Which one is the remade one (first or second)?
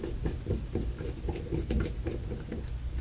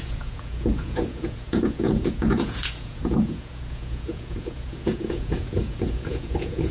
second